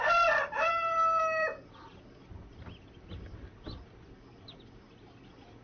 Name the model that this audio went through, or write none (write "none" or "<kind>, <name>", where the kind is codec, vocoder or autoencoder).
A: none